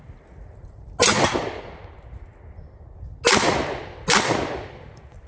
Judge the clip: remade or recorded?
recorded